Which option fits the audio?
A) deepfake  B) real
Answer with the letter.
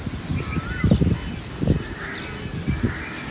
B